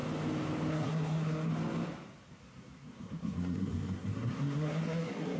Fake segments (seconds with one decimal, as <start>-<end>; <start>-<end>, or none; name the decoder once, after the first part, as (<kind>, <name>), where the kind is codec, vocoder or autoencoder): 0.7-1.5 (codec, SNAC); 2.4-5.4